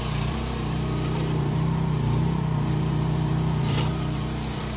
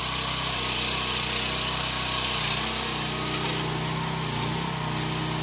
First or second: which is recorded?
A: second